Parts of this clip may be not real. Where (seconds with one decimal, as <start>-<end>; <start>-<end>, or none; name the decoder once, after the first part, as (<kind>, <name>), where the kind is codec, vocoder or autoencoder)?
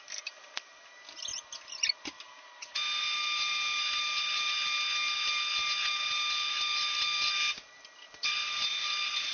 none